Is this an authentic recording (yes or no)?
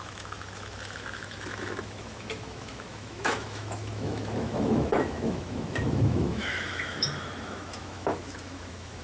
no